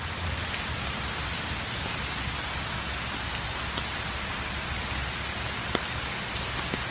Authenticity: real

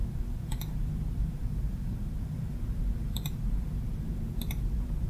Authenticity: fake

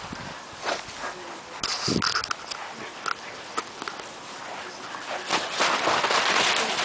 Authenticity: real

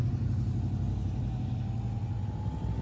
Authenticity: real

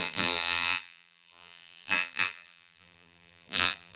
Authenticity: fake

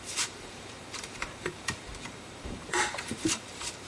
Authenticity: fake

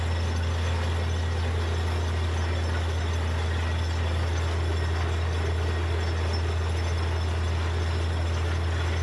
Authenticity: real